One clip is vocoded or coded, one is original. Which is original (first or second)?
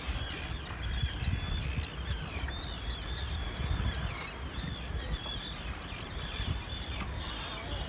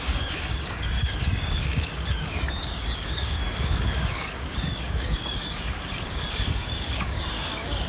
first